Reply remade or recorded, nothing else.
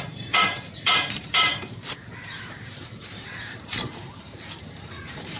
remade